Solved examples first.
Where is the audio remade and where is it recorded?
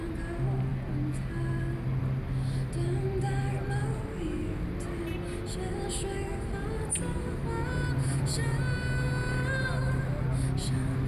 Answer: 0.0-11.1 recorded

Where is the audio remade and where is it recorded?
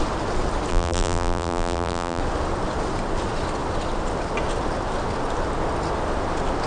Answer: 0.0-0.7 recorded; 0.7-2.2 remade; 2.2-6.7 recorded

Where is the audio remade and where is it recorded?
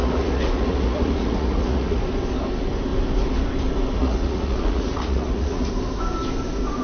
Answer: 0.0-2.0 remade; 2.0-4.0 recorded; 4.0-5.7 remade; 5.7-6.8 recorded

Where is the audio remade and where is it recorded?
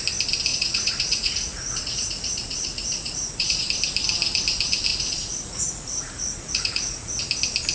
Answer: 0.0-0.5 recorded; 0.5-3.6 remade; 3.6-4.9 recorded; 4.9-7.2 remade; 7.2-7.7 recorded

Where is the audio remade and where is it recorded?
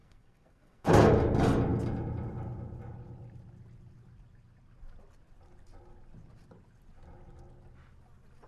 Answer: 0.0-1.1 remade; 1.1-8.5 recorded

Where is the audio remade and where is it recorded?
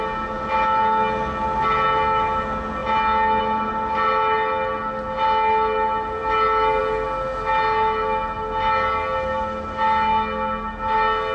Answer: 0.0-11.3 recorded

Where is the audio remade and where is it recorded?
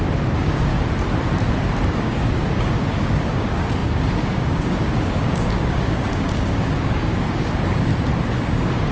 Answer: 0.0-0.7 remade; 0.7-2.0 recorded; 2.0-7.9 remade; 7.9-8.4 recorded; 8.4-8.9 remade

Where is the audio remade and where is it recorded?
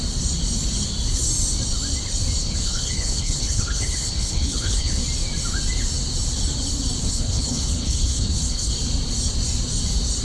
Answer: 0.0-2.4 recorded; 2.4-5.0 remade; 5.0-7.0 recorded; 7.0-8.7 remade; 8.7-10.2 recorded